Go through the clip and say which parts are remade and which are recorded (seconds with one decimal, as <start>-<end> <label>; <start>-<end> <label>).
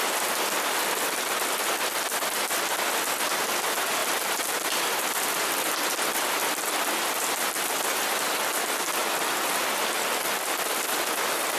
0.0-4.0 recorded; 4.0-8.6 remade; 8.6-11.6 recorded